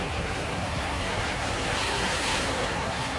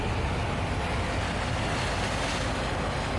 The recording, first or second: second